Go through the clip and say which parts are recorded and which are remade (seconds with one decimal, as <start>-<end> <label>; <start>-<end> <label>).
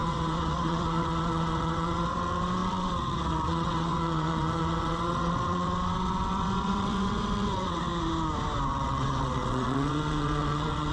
0.0-7.9 remade; 7.9-8.7 recorded; 8.7-10.9 remade